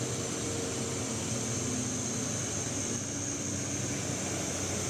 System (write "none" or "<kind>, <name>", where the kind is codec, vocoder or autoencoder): none